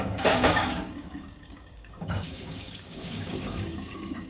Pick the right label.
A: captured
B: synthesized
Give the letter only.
B